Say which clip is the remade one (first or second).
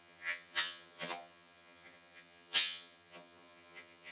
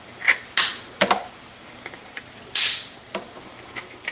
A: first